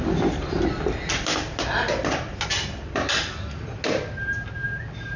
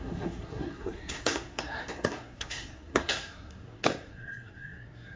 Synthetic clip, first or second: second